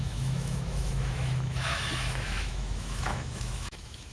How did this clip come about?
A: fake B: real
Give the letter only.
A